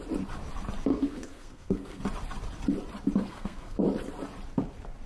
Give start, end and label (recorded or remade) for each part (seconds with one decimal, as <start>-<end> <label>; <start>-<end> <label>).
0.0-0.9 recorded; 0.9-2.0 remade; 2.0-3.2 recorded; 3.2-3.8 remade; 3.8-5.1 recorded